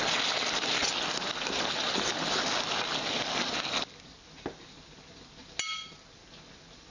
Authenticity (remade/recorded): recorded